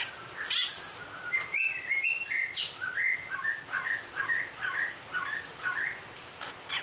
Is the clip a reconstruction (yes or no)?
no